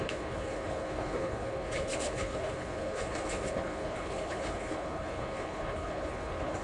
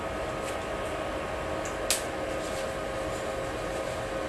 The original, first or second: second